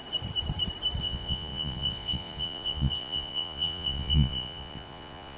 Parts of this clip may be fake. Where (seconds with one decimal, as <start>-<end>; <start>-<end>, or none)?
1.0-5.4